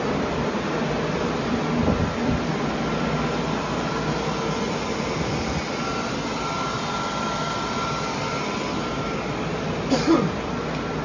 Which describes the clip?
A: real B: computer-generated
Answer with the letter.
A